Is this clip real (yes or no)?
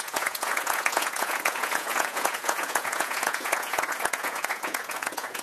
no